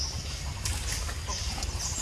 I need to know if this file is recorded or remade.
recorded